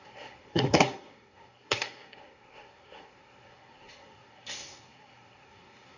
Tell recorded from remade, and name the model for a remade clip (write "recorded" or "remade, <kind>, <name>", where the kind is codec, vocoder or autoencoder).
remade, codec, SNAC